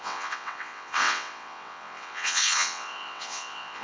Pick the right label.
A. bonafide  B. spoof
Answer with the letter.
B